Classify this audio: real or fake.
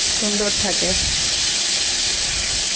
real